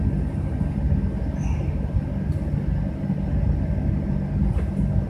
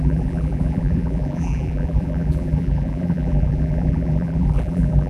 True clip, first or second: first